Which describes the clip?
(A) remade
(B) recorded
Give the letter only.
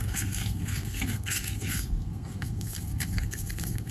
A